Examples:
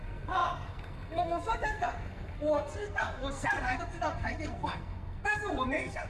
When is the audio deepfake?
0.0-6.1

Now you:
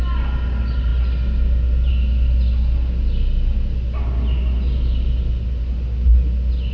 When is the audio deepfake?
none

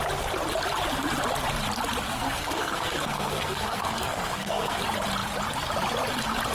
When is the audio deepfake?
2.1-4.8

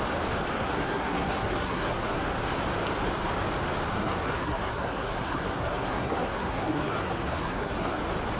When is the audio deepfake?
0.5-2.3; 3.9-8.0

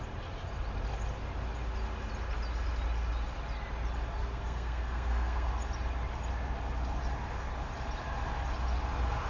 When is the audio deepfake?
4.2-5.5

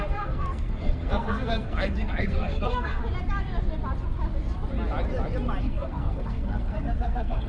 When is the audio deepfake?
0.0-3.0; 5.6-7.5